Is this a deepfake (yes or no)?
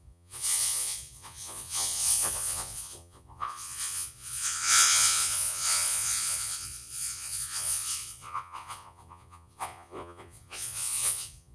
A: yes